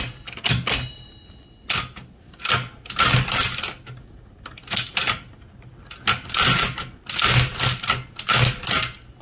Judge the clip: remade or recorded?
recorded